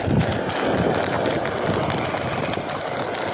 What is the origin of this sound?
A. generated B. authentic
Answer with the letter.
B